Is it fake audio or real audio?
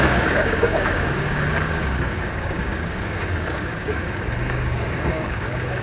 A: fake